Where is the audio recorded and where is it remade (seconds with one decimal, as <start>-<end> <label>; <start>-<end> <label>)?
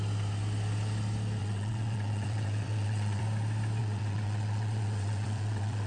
0.0-1.4 recorded; 1.4-3.2 remade; 3.2-3.8 recorded; 3.8-5.9 remade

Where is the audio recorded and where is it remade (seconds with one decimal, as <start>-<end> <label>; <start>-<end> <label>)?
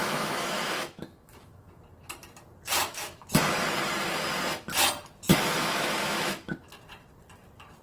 0.0-1.8 remade; 1.8-2.8 recorded; 2.8-3.3 remade; 3.3-5.3 recorded; 5.3-6.6 remade; 6.6-7.8 recorded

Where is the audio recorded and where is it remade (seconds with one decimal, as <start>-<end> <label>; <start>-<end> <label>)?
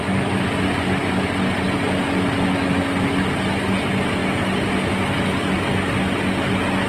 0.0-6.9 recorded